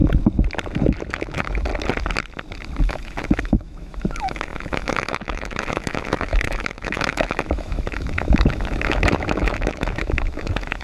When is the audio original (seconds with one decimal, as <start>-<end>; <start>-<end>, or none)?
0.0-1.1; 1.7-2.8

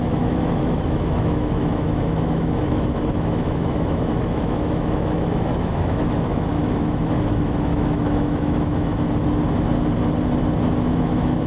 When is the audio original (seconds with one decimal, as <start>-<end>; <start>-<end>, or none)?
8.9-11.0